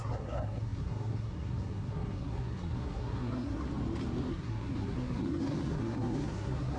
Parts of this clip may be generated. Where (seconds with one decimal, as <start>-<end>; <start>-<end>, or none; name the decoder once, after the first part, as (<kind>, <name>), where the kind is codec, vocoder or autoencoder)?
0.0-3.7 (codec, SNAC); 4.3-6.8